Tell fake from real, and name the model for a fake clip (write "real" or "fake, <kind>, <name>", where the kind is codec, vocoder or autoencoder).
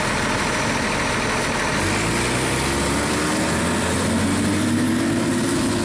real